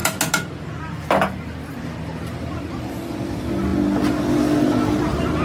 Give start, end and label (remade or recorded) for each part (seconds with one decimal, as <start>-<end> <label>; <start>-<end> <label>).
0.0-5.4 recorded